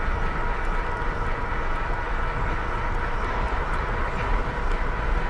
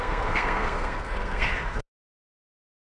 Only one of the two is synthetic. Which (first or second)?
second